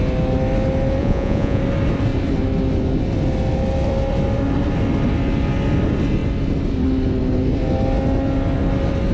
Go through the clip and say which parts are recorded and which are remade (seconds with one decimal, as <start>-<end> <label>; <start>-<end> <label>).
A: 0.0-1.0 recorded; 1.0-1.6 remade; 1.6-9.1 recorded